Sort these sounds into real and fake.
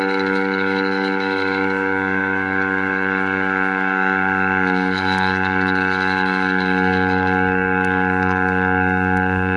fake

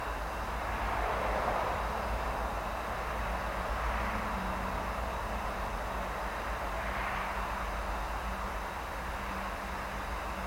real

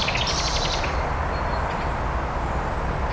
real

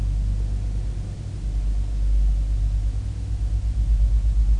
real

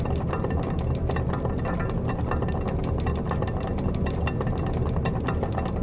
real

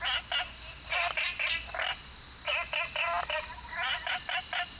real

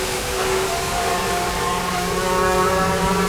fake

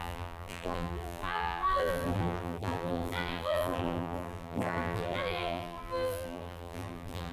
fake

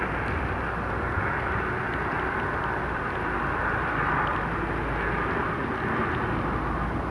real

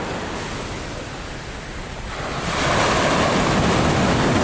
real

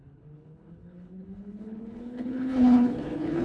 fake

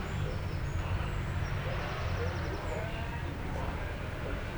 fake